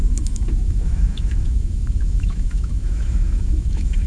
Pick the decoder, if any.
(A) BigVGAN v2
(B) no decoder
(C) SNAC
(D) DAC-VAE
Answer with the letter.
D